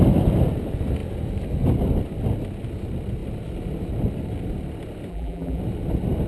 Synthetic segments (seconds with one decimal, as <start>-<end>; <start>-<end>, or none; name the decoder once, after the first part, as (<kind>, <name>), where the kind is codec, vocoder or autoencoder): 5.1-5.6 (vocoder, BigVGAN v2)